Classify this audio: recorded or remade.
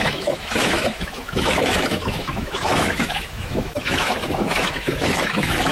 remade